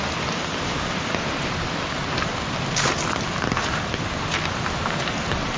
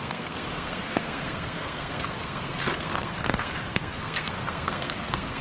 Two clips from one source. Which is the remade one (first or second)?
second